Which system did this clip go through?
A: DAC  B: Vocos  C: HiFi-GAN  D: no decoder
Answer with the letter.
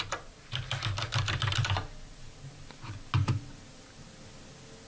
D